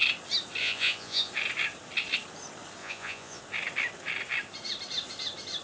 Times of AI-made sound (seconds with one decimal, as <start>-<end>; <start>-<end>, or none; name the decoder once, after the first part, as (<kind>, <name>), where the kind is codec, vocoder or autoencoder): 0.6-1.3 (vocoder, Vocos); 2.8-3.4